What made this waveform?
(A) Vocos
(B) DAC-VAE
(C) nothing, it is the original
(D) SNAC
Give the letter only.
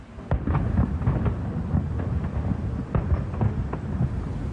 C